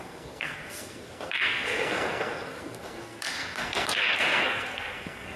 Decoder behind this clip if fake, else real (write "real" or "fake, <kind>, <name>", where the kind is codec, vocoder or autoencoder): fake, codec, SNAC